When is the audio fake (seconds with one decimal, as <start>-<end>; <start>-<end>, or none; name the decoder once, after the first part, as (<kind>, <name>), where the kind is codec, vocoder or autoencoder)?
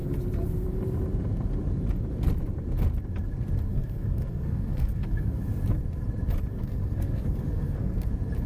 3.7-5.4 (codec, SNAC); 6.5-8.1